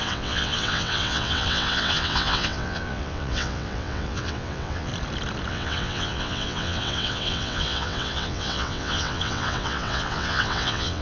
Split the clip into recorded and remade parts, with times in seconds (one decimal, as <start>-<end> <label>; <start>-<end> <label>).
0.0-4.9 remade; 4.9-5.5 recorded; 5.5-11.0 remade